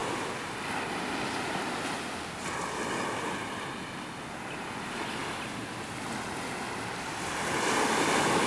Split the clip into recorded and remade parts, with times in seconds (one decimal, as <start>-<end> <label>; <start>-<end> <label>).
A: 0.0-8.5 recorded